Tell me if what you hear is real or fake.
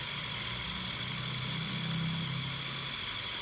real